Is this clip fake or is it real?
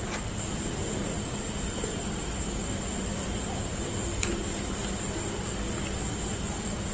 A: fake